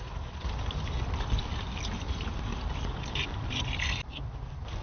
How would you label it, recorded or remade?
recorded